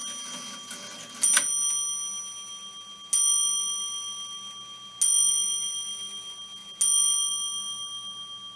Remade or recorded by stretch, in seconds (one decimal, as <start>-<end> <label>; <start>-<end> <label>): 0.0-8.6 recorded